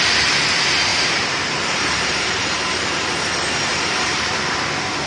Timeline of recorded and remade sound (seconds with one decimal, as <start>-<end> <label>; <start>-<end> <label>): 0.0-0.9 recorded; 0.9-2.9 remade; 2.9-3.7 recorded; 3.7-4.3 remade; 4.3-5.1 recorded